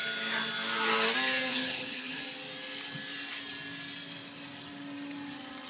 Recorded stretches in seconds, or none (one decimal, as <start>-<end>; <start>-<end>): 0.0-1.5; 2.2-5.7